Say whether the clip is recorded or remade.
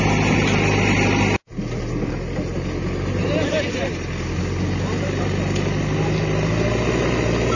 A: recorded